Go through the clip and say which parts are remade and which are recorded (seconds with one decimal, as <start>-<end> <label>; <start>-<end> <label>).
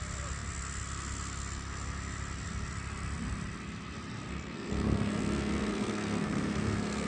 0.0-4.3 recorded; 4.3-7.1 remade